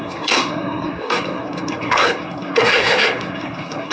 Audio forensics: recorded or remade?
remade